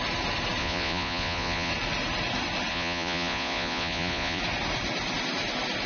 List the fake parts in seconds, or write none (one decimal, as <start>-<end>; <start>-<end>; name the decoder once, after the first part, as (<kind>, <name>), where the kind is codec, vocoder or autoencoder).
0.6-1.7 (vocoder, Vocos); 2.7-4.4